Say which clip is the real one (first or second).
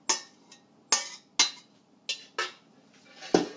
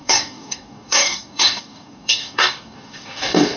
first